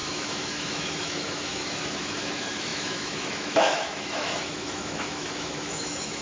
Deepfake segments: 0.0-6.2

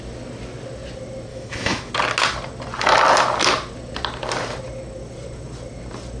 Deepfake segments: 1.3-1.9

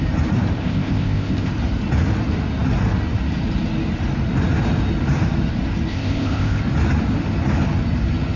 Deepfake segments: 0.6-1.5; 5.9-6.6